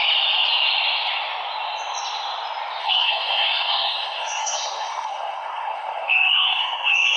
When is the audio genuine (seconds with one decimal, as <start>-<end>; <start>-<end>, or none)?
0.0-2.8